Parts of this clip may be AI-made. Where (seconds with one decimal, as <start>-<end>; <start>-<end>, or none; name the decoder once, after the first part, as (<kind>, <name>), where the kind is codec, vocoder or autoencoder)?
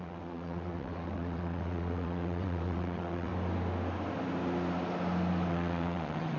0.0-3.3 (vocoder, WaveNeXt); 5.5-6.4